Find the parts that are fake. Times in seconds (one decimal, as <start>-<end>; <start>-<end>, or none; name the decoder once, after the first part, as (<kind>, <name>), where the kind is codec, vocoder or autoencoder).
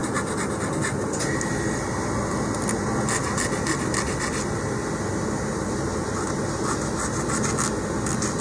none